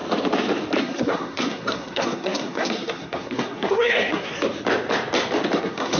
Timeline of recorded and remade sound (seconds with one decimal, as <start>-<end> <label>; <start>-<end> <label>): 0.0-0.8 recorded; 0.8-4.3 remade; 4.3-5.6 recorded; 5.6-6.0 remade